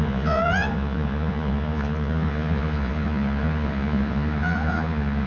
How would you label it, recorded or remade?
remade